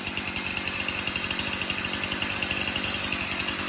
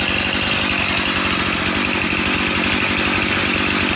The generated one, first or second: second